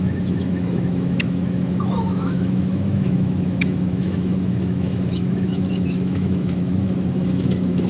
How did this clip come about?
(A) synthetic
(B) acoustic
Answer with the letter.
A